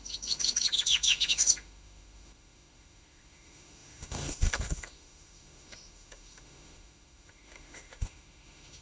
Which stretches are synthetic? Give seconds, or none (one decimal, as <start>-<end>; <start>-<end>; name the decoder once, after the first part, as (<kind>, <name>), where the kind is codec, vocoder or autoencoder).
0.0-8.8 (autoencoder, DAC-VAE)